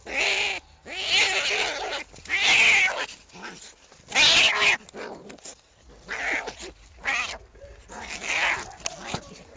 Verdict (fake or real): real